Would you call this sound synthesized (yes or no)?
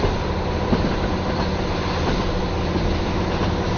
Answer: no